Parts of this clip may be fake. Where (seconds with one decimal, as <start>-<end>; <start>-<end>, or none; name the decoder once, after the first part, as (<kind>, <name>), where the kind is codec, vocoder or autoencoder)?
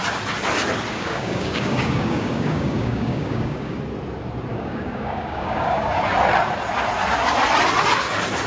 0.9-3.8 (codec, DAC); 4.5-6.0